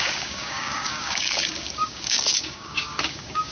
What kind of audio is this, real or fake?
fake